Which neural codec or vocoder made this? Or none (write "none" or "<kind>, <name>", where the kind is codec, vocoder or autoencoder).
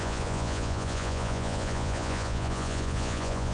vocoder, Vocos